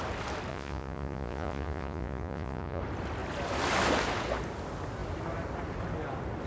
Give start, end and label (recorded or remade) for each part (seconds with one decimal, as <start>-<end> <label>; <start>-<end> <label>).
0.0-0.5 recorded; 0.5-2.8 remade; 2.8-6.5 recorded